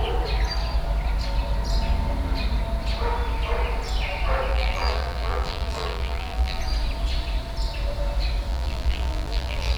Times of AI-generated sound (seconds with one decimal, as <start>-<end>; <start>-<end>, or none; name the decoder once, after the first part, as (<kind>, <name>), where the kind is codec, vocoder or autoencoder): 4.5-6.6 (vocoder, BigVGAN v2); 8.5-9.8